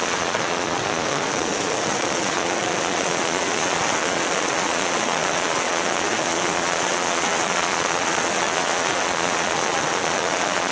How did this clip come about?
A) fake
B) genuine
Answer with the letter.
A